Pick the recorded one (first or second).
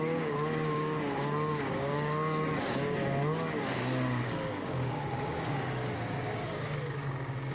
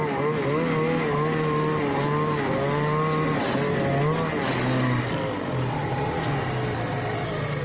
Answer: second